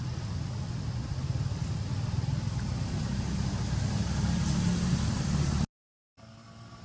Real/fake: real